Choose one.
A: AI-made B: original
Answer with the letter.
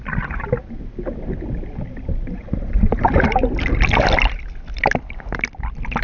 B